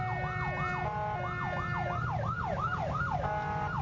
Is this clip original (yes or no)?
yes